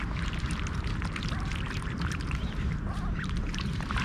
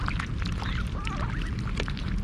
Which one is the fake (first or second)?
first